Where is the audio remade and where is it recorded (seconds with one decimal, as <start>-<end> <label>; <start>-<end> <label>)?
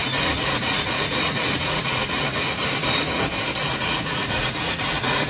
0.0-3.2 remade; 3.2-3.6 recorded; 3.6-5.3 remade